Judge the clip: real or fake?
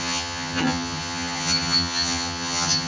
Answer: fake